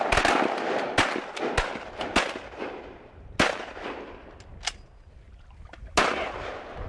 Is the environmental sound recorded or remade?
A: recorded